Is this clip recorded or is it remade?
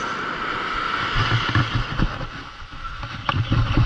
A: recorded